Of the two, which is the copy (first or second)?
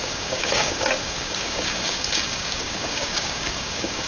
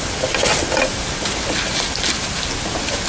first